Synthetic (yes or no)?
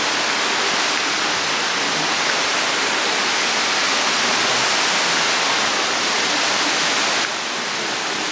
no